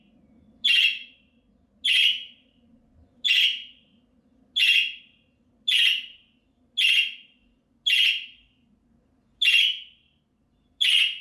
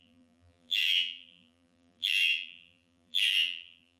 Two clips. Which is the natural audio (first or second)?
first